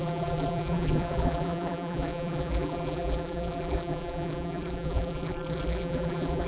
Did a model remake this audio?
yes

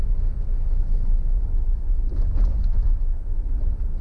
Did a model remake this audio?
no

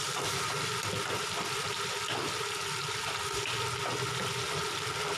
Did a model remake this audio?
no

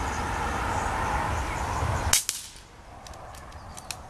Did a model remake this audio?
no